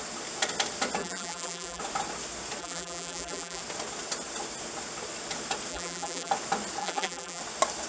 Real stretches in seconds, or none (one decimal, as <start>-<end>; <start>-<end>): 0.0-1.0; 1.8-2.6; 3.6-5.7; 6.3-6.8; 7.4-7.9